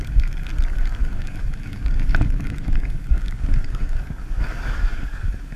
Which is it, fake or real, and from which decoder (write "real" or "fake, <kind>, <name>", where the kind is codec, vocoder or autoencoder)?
fake, codec, DAC